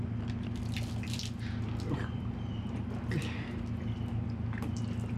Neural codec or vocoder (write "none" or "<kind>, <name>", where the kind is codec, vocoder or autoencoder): none